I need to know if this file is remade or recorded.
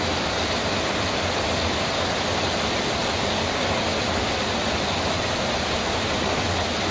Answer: recorded